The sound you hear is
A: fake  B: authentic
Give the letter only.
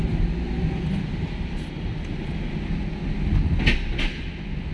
B